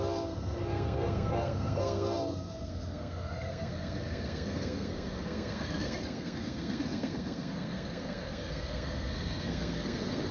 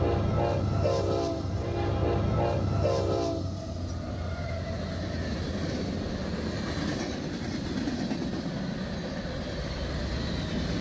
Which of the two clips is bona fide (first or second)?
second